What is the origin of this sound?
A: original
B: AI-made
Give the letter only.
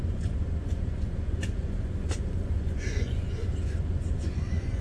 B